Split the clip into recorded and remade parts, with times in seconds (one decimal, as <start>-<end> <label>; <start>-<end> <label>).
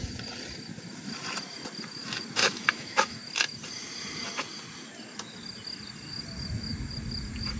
0.0-2.4 recorded; 2.4-3.2 remade; 3.2-7.6 recorded